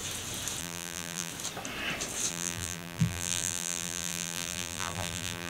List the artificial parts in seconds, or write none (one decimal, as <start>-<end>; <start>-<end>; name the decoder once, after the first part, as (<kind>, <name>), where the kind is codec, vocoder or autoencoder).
0.6-1.3 (vocoder, BigVGAN v2); 2.3-5.5